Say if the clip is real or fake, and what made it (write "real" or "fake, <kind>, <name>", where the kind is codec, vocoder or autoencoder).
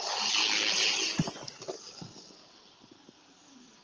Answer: real